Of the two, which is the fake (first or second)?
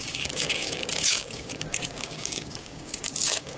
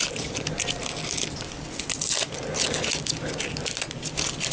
first